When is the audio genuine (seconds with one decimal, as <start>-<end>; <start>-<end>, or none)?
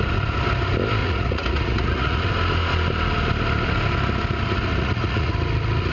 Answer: 0.0-1.0; 2.3-4.7; 5.3-5.9